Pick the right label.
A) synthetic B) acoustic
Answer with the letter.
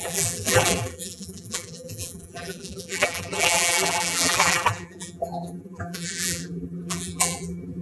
A